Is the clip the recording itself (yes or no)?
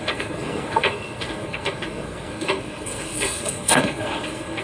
no